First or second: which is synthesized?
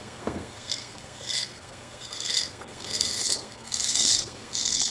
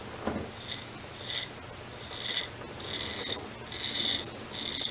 first